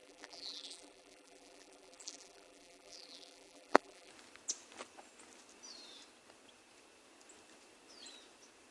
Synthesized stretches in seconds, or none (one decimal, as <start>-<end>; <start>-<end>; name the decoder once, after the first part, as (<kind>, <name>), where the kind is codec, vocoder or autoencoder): 0.0-4.1 (vocoder, BigVGAN v2)